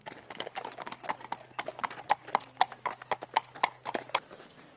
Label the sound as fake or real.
real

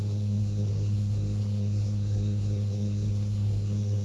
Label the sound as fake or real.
fake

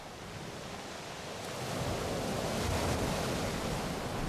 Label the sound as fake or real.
real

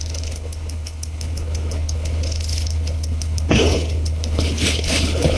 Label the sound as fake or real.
fake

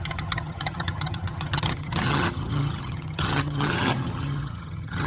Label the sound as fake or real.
fake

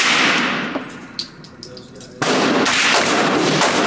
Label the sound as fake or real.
real